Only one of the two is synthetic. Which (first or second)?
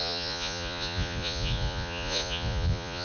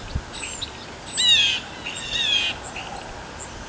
first